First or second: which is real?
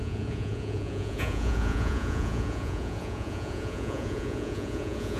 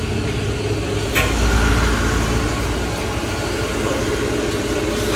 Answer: second